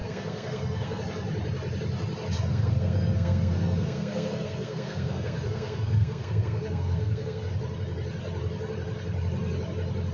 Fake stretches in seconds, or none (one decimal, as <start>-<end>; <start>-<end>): 0.0-1.0; 2.5-7.5